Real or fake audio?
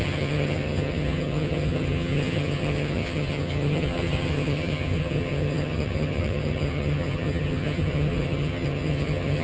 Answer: fake